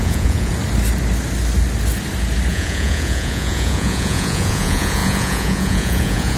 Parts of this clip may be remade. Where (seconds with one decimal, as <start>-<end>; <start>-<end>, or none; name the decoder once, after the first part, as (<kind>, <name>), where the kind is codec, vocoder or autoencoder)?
0.0-0.5 (vocoder, Vocos); 2.5-6.4